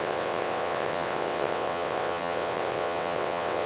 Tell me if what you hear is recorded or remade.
remade